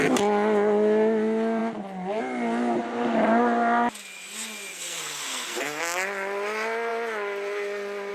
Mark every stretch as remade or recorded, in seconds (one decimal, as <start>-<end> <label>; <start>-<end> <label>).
0.0-4.7 recorded; 4.7-5.8 remade; 5.8-8.1 recorded